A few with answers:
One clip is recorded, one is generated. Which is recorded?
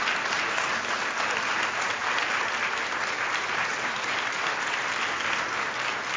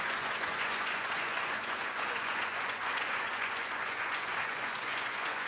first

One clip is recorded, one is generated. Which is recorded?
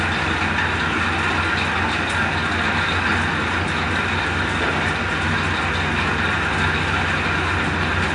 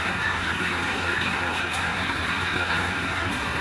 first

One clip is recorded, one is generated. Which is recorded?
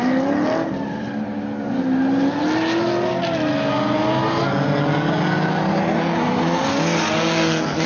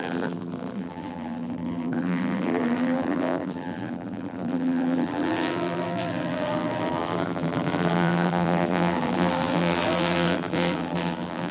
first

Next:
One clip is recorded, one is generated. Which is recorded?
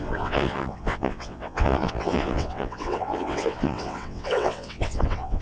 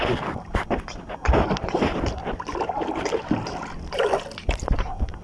second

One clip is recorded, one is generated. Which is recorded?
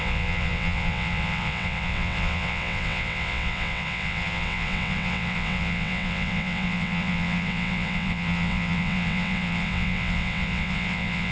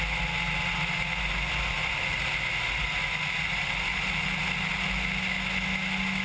second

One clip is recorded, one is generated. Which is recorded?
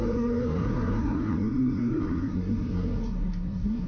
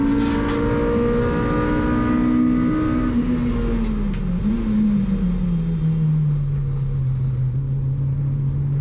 second